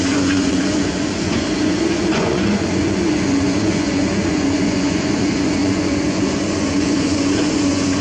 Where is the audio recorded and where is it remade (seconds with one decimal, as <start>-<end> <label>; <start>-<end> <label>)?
0.0-8.0 remade